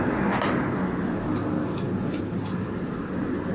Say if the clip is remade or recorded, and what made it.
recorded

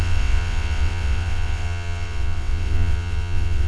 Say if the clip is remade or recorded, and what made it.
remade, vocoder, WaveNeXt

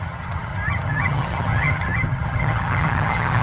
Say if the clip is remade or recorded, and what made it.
remade, vocoder, HiFi-GAN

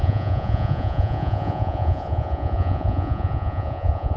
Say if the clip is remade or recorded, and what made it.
remade, vocoder, Vocos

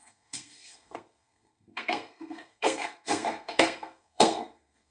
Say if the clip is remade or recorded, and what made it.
remade, codec, SNAC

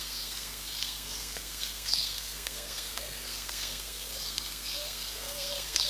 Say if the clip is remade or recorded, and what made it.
remade, codec, SNAC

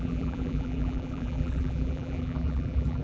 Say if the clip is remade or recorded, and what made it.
remade, vocoder, BigVGAN v2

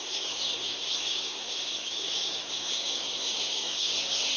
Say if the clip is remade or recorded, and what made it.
remade, codec, SNAC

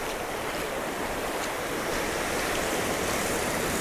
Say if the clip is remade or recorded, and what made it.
remade, vocoder, BigVGAN v2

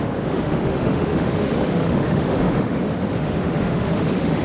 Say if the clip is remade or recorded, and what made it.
remade, autoencoder, DAC-VAE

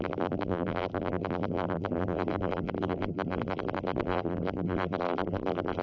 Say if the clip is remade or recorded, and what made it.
remade, vocoder, BigVGAN v2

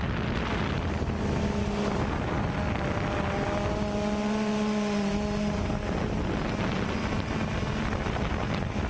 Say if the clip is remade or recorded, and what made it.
recorded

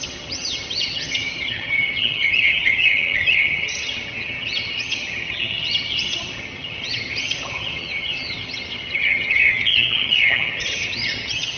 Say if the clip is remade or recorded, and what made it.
remade, vocoder, HiFi-GAN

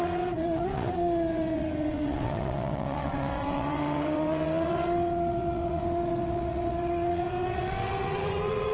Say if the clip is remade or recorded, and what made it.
remade, vocoder, WaveNeXt